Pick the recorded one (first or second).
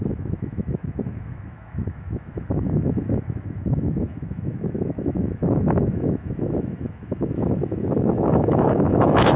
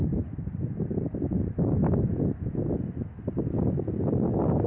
second